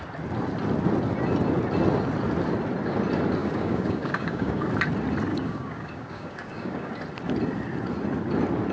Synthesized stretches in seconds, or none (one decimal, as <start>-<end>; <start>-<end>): 3.4-4.7; 5.3-6.9